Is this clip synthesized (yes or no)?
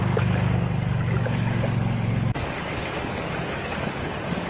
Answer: yes